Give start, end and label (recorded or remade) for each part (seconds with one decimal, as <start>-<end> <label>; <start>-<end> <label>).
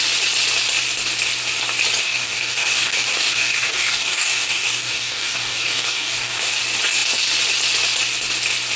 0.0-2.0 recorded; 2.0-6.6 remade; 6.6-8.8 recorded